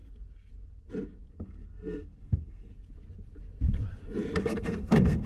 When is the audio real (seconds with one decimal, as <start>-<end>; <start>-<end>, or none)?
0.0-1.3; 2.7-4.4